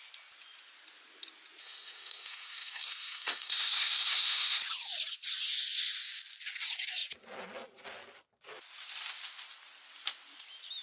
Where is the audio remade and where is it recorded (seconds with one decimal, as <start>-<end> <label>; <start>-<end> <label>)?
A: 0.0-1.6 recorded; 1.6-4.6 remade; 4.6-10.8 recorded